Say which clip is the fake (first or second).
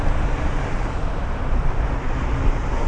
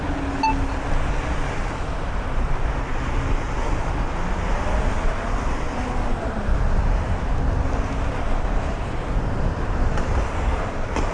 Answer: first